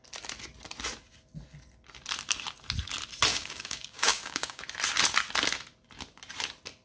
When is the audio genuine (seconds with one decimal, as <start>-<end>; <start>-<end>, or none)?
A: 0.0-3.3; 4.6-6.8